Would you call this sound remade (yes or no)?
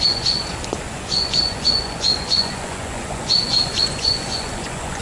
yes